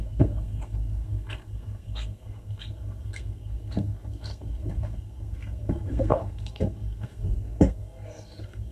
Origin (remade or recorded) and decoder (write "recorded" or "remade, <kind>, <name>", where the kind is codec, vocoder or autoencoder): remade, codec, SNAC